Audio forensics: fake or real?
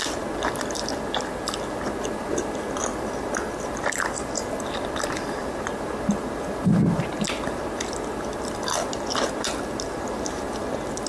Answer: fake